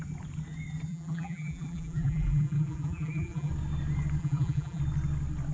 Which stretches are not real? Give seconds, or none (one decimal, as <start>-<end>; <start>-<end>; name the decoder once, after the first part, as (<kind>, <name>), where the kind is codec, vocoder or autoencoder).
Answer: 0.9-3.5 (vocoder, BigVGAN v2); 4.2-4.8